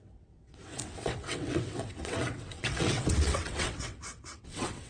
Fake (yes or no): yes